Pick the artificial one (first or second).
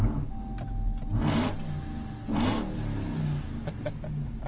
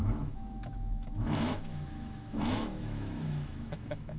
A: second